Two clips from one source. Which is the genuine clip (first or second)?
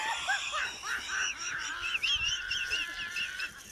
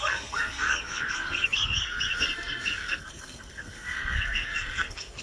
first